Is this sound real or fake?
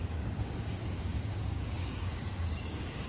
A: fake